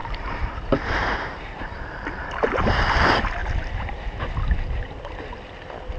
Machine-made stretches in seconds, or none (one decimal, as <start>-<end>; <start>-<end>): 0.0-2.6; 3.4-4.2